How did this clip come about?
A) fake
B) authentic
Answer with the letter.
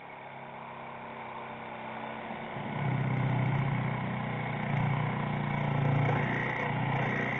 B